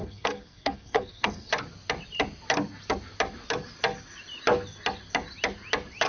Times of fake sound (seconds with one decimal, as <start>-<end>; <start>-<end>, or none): 0.0-1.5